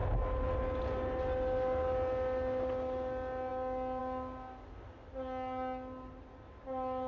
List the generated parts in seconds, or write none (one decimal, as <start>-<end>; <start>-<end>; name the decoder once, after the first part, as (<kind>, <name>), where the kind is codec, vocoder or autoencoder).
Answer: none

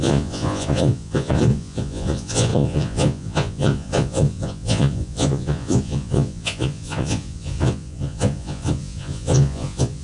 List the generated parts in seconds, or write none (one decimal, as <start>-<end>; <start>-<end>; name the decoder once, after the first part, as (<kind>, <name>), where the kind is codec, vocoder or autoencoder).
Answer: 0.0-10.0 (vocoder, Vocos)

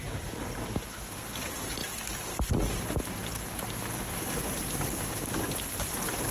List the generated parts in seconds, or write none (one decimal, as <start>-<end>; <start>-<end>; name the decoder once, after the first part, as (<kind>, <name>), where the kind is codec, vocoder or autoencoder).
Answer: 0.0-1.8 (vocoder, BigVGAN v2); 2.8-6.3

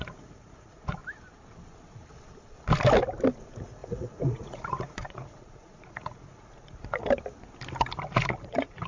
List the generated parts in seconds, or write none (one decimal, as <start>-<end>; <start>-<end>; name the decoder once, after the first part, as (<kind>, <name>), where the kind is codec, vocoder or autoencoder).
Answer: 0.0-1.0 (vocoder, Vocos); 3.3-7.0; 8.1-8.9

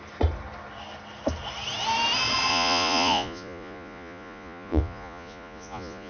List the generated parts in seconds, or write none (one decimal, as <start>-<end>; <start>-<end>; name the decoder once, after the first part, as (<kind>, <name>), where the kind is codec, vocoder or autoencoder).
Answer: 2.5-6.1 (vocoder, Vocos)

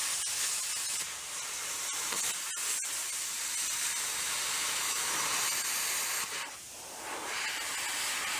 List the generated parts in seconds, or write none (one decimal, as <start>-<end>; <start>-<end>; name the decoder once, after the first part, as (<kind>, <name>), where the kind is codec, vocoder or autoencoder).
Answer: 4.6-5.1 (autoencoder, DAC-VAE)

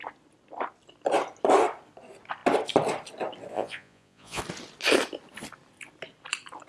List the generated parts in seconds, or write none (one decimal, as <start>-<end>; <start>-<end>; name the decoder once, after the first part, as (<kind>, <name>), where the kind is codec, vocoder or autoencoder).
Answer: 3.5-4.4 (vocoder, Vocos)

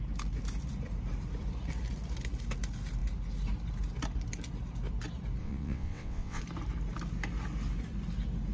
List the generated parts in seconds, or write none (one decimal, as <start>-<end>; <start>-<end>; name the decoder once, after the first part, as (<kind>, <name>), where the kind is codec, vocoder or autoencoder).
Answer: 5.4-6.4 (vocoder, WaveNeXt)